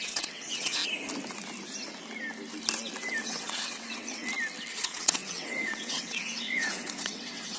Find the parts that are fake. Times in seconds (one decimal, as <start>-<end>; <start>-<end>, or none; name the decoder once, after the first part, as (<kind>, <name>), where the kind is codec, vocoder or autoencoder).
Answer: 0.0-0.8 (vocoder, WaveNeXt); 3.2-4.2; 4.7-7.6